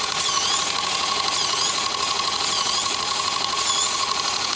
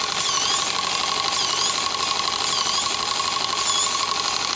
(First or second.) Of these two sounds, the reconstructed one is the first